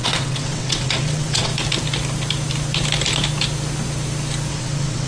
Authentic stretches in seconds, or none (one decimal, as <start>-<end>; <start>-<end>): 1.5-4.5